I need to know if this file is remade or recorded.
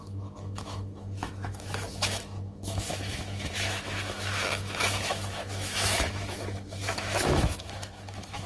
remade